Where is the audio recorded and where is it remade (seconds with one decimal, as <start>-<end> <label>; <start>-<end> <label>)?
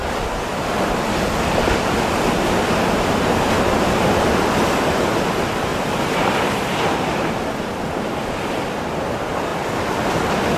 0.0-5.7 recorded; 5.7-7.3 remade; 7.3-10.6 recorded